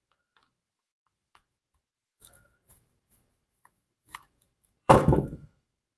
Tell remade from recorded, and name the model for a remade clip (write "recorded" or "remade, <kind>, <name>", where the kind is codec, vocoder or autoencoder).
remade, autoencoder, DAC-VAE